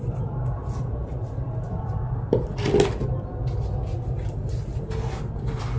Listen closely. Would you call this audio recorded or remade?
recorded